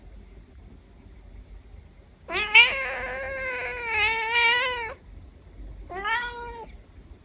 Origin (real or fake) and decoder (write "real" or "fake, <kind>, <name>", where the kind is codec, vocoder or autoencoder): real